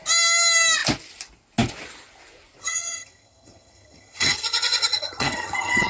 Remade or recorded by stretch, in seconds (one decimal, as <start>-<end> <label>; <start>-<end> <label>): 0.0-2.6 recorded; 2.6-5.9 remade